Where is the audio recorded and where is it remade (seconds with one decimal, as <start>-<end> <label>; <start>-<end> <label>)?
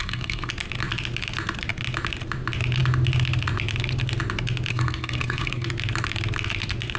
0.0-0.5 remade; 0.5-4.7 recorded; 4.7-5.7 remade; 5.7-7.0 recorded